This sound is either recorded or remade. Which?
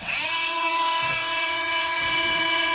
remade